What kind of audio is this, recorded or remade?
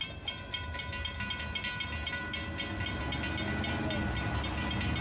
recorded